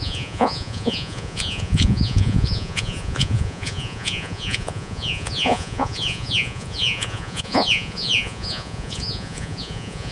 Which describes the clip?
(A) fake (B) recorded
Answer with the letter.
A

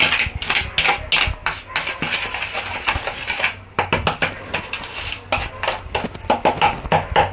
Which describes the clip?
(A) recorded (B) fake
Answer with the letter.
A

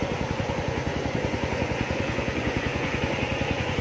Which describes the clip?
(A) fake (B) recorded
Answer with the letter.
A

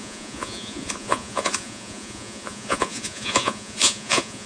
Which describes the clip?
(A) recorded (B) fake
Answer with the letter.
B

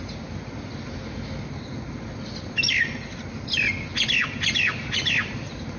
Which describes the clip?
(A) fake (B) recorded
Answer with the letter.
B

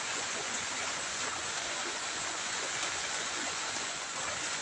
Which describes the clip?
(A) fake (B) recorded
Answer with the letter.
A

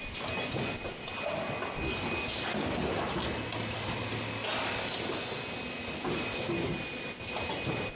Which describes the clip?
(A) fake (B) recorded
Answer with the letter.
B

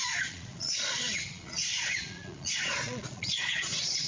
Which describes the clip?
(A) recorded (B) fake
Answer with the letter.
B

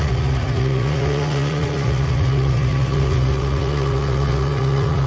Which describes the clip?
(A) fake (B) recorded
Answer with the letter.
A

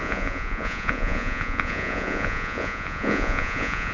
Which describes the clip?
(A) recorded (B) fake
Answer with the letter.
B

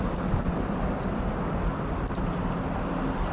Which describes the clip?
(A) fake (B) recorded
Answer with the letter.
B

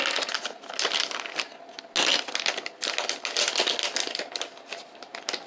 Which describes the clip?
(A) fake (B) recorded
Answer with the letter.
B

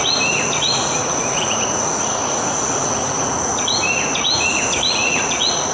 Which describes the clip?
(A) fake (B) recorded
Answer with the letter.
A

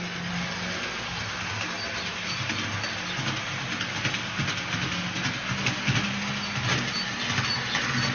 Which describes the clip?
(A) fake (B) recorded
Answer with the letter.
B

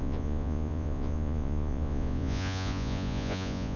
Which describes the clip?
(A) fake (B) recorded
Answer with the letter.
A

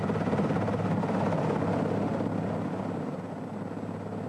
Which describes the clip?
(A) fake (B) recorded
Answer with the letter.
B